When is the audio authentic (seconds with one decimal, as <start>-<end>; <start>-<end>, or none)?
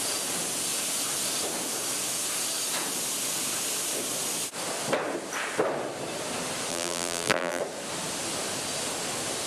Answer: 0.0-6.7; 7.6-9.5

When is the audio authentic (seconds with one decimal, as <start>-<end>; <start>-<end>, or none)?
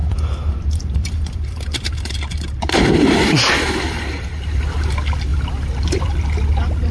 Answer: 4.0-5.3; 6.0-6.9